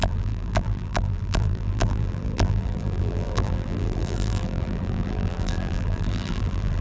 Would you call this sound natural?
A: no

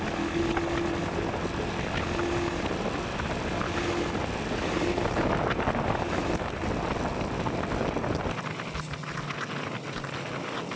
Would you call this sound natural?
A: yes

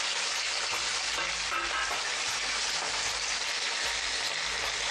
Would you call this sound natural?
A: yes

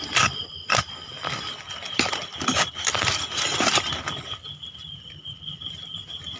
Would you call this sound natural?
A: no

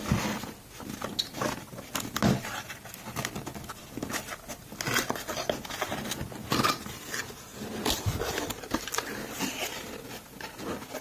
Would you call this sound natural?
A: yes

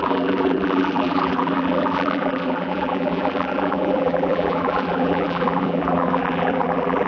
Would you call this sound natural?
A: no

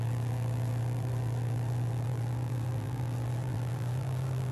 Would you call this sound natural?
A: no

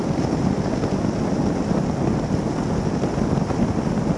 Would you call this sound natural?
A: yes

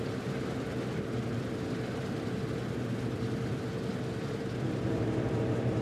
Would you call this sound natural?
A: no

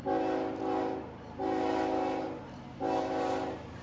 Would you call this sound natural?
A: yes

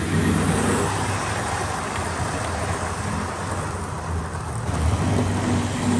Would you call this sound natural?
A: yes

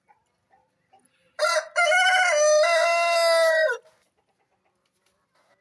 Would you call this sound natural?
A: yes